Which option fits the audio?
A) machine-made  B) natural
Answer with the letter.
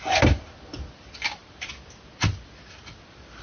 B